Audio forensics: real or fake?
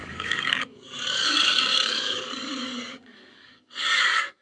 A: fake